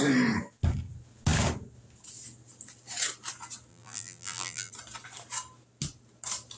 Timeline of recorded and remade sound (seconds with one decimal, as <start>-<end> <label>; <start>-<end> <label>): 0.0-3.7 recorded; 3.7-4.7 remade; 4.7-6.6 recorded